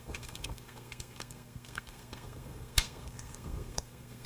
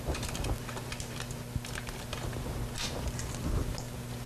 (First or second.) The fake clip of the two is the first